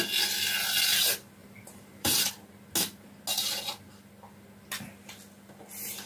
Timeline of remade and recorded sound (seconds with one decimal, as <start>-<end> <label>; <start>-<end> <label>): 0.0-1.4 recorded; 1.4-2.3 remade; 2.3-6.1 recorded